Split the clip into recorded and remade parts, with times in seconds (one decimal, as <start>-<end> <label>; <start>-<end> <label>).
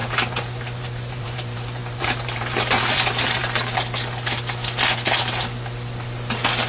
0.0-3.4 remade; 3.4-6.7 recorded